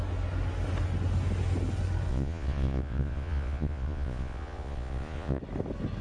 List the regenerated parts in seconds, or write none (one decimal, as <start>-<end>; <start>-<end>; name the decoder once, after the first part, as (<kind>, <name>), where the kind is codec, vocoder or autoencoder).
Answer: 2.1-5.4 (vocoder, Vocos)